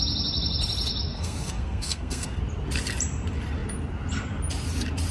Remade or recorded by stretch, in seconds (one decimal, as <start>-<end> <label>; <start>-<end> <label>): 0.0-1.1 recorded; 1.1-2.4 remade; 2.4-5.1 recorded